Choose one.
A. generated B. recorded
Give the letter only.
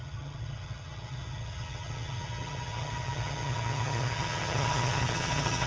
A